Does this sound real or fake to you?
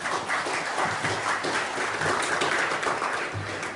real